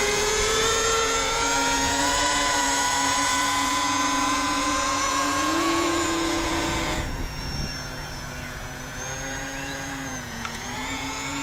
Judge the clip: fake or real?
fake